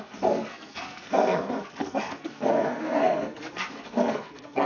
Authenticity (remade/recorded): remade